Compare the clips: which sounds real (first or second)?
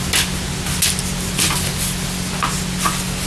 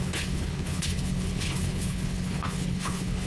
first